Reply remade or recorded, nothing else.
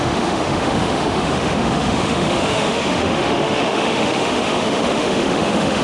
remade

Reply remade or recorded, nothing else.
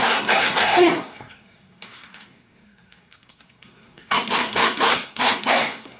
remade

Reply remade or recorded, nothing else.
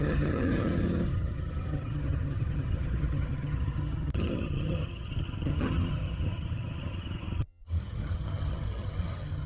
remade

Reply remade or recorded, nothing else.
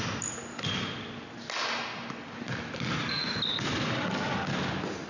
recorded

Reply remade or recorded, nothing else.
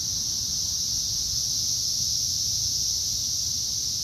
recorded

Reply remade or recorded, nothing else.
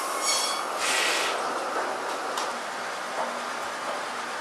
recorded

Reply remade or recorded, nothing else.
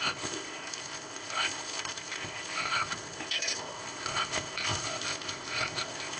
remade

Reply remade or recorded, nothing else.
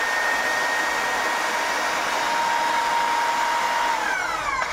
recorded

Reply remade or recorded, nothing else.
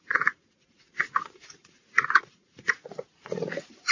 remade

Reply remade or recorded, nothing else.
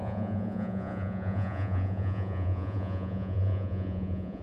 remade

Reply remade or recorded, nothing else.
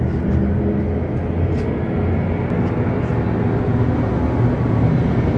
recorded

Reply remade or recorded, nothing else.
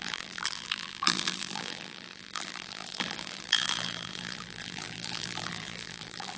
remade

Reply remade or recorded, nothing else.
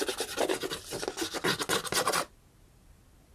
recorded